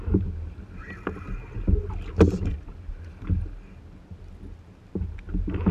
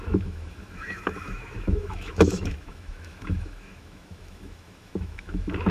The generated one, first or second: second